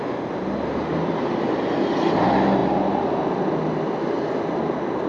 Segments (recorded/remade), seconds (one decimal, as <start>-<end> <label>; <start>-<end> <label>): 0.0-5.1 recorded